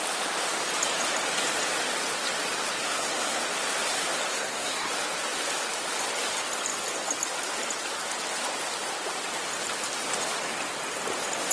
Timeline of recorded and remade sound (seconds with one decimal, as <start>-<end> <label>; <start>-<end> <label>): 0.0-2.8 recorded; 2.8-3.4 remade; 3.4-4.3 recorded; 4.3-4.9 remade; 4.9-11.5 recorded